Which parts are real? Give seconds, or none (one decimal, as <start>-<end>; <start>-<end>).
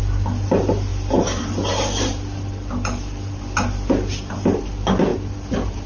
0.0-5.9